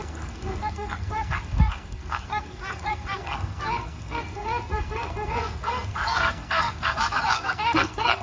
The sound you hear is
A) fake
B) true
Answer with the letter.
A